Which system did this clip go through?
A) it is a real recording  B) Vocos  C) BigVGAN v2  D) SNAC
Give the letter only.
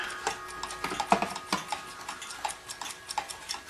A